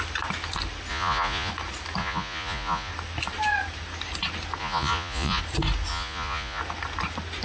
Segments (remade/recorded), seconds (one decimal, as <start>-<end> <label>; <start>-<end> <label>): 0.0-0.9 recorded; 0.9-1.5 remade; 1.5-2.0 recorded; 2.0-2.9 remade; 2.9-4.6 recorded; 4.6-5.4 remade; 5.4-5.9 recorded; 5.9-6.6 remade; 6.6-7.4 recorded